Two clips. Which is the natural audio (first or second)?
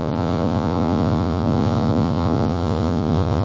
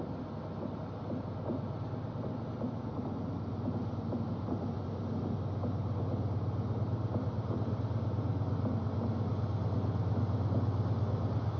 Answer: second